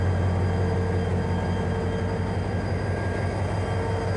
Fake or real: real